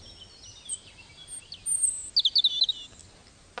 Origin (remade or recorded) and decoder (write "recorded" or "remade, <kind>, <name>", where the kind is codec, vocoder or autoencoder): recorded